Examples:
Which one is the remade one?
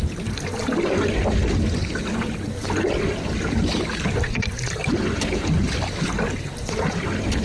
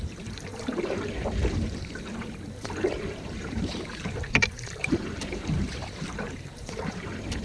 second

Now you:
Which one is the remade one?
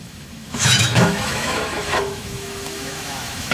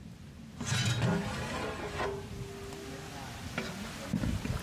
first